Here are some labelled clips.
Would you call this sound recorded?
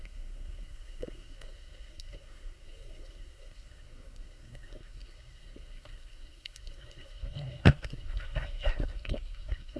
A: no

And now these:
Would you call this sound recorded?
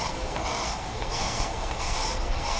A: no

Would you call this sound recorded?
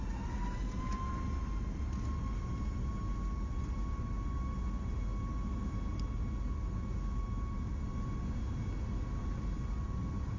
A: yes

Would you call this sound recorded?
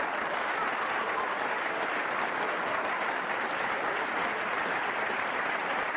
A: yes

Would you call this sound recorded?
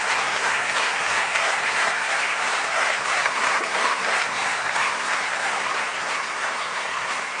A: no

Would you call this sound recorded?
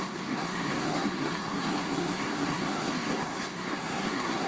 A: no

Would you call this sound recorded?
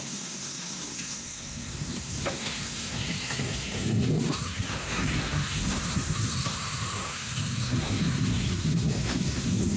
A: no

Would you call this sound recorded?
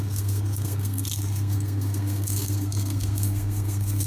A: no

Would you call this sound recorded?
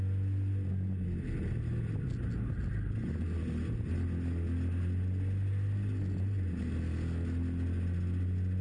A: yes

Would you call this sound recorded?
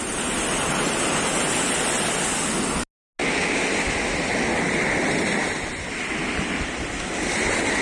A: yes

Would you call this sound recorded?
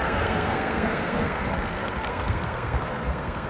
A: no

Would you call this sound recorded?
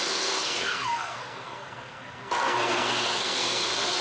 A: no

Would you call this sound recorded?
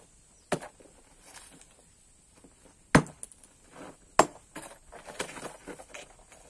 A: yes